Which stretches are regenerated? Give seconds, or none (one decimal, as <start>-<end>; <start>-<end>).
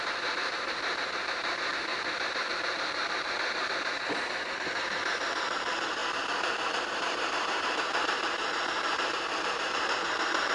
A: 0.0-1.9; 2.5-10.5